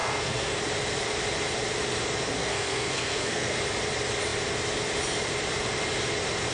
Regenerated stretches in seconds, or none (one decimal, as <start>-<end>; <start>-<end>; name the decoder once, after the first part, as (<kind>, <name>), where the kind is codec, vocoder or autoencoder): 0.0-0.6 (codec, SNAC); 2.4-3.6